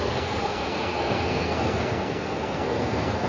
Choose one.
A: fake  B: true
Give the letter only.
A